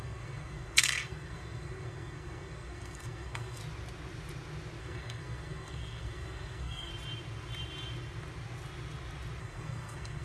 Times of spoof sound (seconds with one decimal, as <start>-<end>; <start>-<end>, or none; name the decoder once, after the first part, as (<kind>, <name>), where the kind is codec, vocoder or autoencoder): 0.0-3.6 (codec, SNAC); 4.8-6.9; 9.4-10.2